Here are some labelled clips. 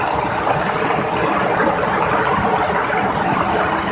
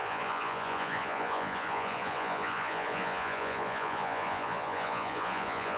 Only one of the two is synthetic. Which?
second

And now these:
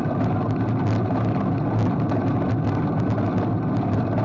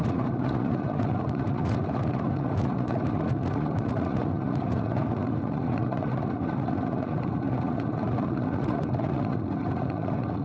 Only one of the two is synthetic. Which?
second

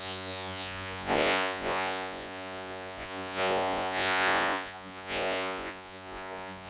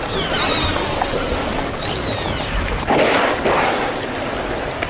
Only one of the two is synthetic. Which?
first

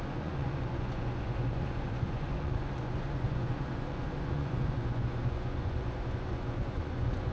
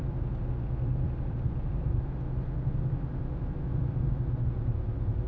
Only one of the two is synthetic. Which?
first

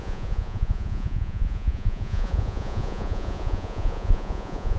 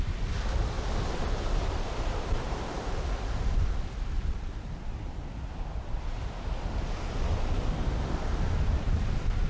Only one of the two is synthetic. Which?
first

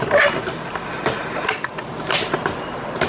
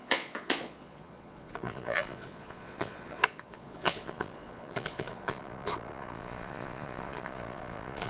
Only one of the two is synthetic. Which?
second